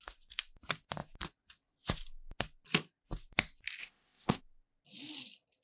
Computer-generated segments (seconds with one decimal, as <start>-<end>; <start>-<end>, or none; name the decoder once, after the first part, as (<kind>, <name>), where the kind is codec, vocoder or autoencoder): 3.8-4.4 (codec, ZipCodec)